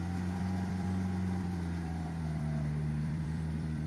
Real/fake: fake